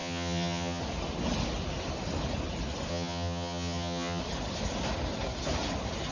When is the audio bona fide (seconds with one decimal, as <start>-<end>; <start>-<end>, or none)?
0.8-2.9; 4.2-6.1